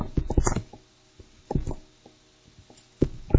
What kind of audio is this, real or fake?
real